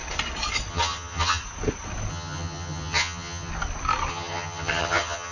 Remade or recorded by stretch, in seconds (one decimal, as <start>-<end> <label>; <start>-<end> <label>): 0.0-0.7 recorded; 0.7-1.4 remade; 1.4-2.1 recorded; 2.1-3.5 remade; 3.5-4.1 recorded; 4.1-5.3 remade